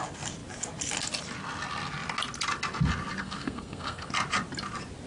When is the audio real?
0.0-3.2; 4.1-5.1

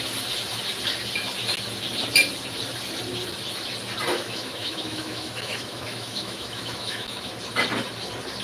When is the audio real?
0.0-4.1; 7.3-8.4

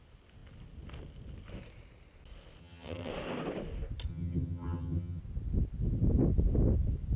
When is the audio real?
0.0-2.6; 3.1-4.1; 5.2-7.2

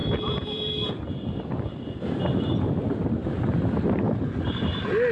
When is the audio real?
1.0-5.1